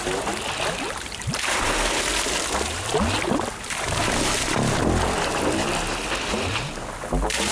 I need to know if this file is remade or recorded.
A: recorded